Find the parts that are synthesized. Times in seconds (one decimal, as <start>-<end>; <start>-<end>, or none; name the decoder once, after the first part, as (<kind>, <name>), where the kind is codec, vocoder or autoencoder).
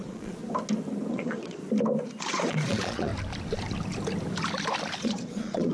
0.0-0.4 (vocoder, Vocos); 1.1-1.6; 2.2-3.1; 5.0-5.7